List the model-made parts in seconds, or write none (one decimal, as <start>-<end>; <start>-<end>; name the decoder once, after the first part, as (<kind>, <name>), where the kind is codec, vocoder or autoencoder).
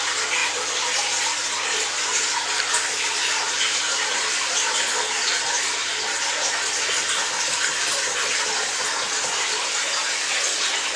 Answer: none